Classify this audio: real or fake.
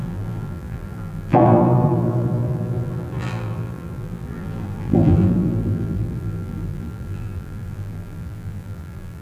fake